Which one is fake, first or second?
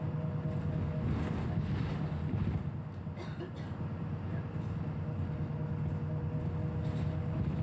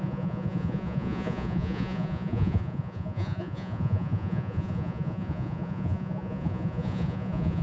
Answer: second